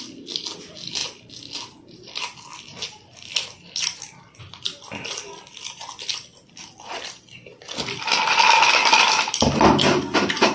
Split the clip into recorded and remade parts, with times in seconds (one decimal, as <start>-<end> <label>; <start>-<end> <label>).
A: 0.0-10.5 recorded